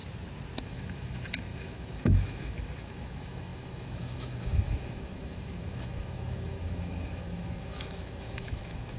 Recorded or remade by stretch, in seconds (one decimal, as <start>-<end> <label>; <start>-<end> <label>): 0.0-0.6 recorded; 0.6-9.0 remade